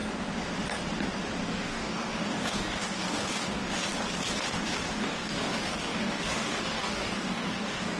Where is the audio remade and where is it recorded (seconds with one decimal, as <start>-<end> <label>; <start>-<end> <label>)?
0.0-1.5 recorded; 1.5-3.9 remade; 3.9-5.0 recorded; 5.0-8.0 remade